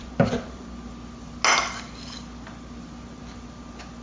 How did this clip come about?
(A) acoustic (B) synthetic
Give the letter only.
A